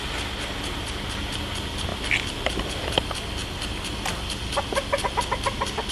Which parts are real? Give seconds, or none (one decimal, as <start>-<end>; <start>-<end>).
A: 0.0-5.9